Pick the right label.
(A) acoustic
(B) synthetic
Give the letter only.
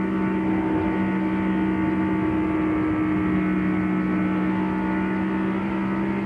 A